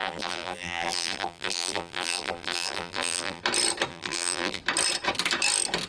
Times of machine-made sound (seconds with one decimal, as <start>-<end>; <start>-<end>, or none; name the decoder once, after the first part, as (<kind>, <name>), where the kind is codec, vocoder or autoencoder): 0.0-3.4 (vocoder, BigVGAN v2); 3.9-4.6